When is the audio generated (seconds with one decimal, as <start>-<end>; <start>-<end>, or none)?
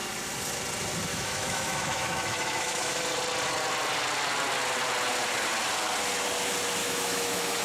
1.1-3.0; 6.8-7.6